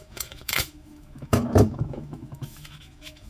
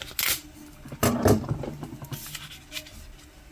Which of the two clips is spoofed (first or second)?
first